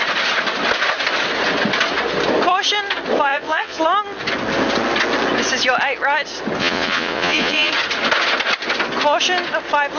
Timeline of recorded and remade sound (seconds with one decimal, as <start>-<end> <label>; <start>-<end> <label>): 0.0-3.3 recorded; 3.3-3.8 remade; 3.8-6.6 recorded; 6.6-7.7 remade; 7.7-10.0 recorded